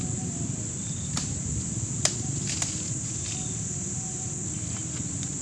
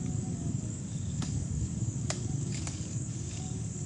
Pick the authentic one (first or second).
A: first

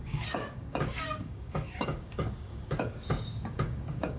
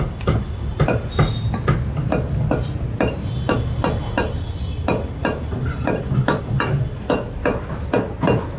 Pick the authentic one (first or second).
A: second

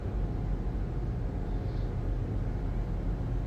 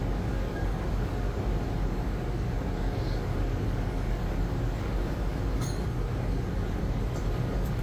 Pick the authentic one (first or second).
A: first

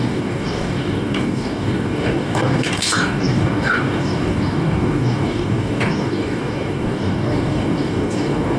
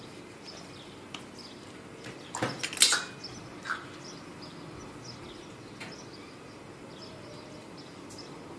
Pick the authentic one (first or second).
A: second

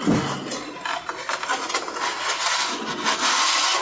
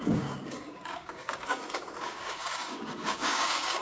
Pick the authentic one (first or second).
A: first